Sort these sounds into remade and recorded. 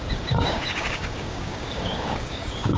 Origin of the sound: remade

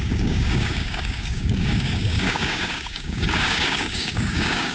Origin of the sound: remade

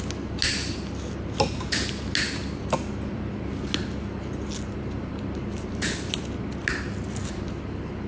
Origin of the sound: recorded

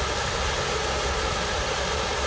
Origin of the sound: recorded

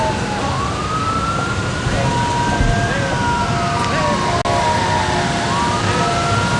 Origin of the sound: recorded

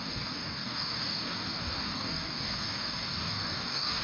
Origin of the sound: remade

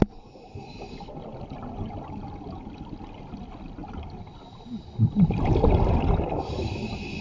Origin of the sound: recorded